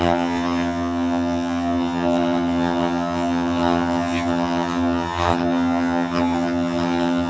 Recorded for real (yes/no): no